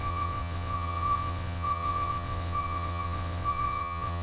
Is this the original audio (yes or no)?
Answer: no